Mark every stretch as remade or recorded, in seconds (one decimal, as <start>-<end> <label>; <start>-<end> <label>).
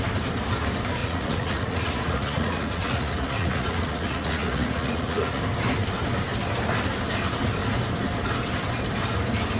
0.0-1.0 recorded; 1.0-5.4 remade; 5.4-9.6 recorded